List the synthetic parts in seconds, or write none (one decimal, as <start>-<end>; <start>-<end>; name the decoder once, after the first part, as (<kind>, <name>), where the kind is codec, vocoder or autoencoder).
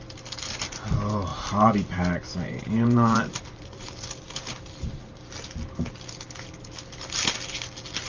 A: 1.3-5.2 (vocoder, BigVGAN v2)